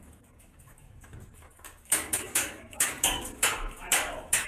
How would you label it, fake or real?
fake